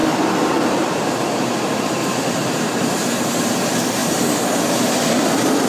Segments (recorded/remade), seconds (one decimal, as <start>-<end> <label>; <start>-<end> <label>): 0.0-4.0 remade; 4.0-4.6 recorded; 4.6-5.7 remade